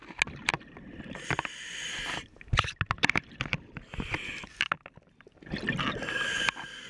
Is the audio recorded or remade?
recorded